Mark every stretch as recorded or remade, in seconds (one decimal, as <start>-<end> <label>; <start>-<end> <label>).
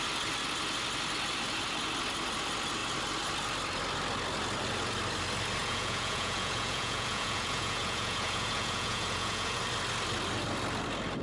0.0-5.6 recorded; 5.6-9.6 remade; 9.6-11.2 recorded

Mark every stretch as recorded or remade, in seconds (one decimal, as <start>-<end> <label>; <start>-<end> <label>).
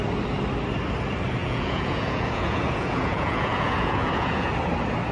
0.0-1.4 recorded; 1.4-4.5 remade; 4.5-5.1 recorded